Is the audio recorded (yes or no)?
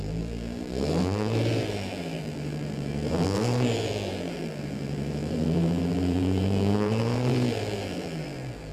no